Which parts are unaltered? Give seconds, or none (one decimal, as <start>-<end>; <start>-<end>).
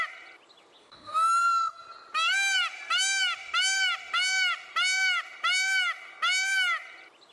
0.0-0.8; 1.4-7.3